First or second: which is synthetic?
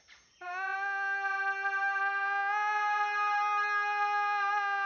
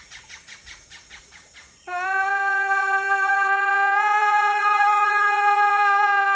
second